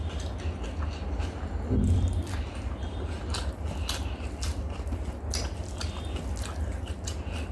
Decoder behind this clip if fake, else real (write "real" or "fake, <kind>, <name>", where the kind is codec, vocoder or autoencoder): real